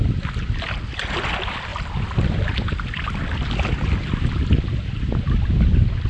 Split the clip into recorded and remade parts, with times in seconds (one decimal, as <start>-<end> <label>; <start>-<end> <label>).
0.0-6.1 recorded